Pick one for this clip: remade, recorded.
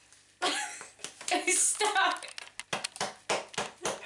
recorded